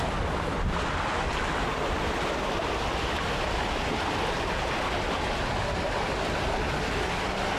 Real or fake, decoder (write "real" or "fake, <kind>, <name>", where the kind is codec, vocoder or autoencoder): real